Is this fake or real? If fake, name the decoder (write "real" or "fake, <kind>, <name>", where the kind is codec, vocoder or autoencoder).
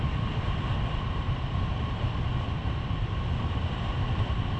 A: fake, vocoder, BigVGAN v2